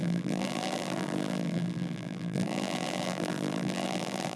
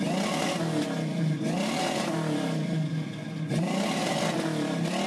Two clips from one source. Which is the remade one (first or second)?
first